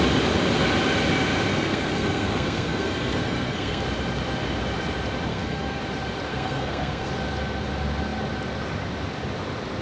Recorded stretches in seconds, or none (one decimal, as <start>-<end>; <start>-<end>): 0.0-1.5; 3.8-5.3; 5.8-6.3; 7.1-9.8

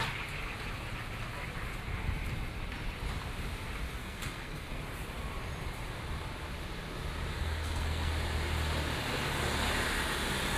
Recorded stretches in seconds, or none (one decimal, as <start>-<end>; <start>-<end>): 0.0-4.0; 4.8-7.3; 8.1-10.6

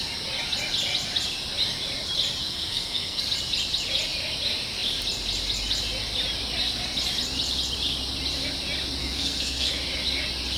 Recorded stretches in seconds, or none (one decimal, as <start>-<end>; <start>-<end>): 0.0-2.4; 3.2-9.0; 9.7-10.6

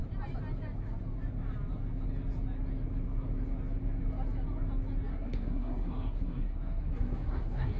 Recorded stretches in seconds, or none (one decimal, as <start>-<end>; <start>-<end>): 0.0-5.1

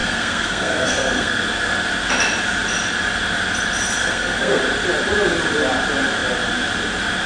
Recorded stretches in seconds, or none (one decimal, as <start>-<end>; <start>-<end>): 1.4-4.0; 4.6-7.3

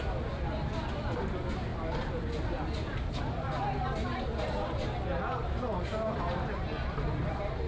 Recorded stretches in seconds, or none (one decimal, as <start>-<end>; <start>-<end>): 0.0-7.7